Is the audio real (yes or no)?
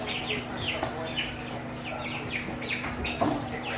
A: yes